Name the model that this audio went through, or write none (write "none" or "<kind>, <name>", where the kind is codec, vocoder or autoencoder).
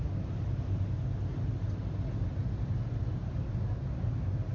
none